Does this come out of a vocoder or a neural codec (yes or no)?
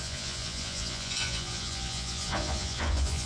yes